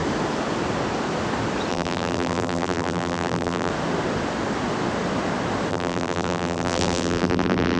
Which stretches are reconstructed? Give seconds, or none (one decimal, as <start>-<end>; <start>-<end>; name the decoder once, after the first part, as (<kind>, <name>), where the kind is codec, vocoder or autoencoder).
1.7-3.7 (vocoder, BigVGAN v2); 5.7-7.8